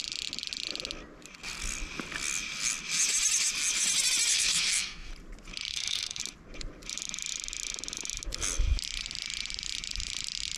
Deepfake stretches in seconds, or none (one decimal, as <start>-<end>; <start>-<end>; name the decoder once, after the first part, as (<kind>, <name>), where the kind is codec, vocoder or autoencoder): 4.3-5.1 (codec, SNAC); 5.7-6.2